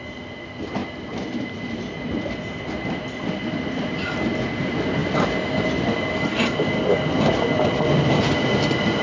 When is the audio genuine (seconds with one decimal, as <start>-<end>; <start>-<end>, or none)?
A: 0.0-9.0